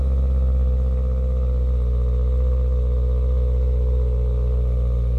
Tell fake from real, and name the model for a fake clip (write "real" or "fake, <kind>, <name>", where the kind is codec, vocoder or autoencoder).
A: real